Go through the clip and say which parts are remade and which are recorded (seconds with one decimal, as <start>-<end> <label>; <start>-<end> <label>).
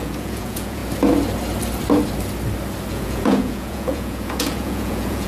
0.0-0.8 remade; 0.8-2.9 recorded; 2.9-5.3 remade